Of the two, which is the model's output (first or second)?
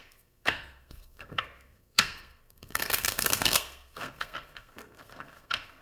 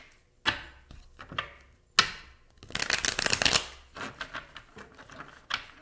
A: first